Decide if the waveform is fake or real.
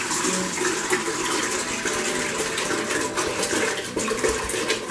real